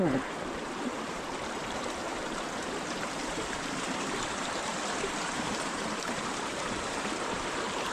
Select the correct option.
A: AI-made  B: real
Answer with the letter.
A